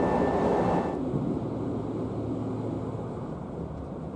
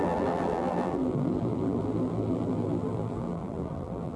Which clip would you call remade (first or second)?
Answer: second